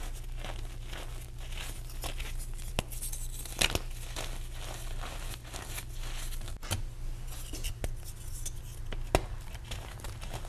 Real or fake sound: real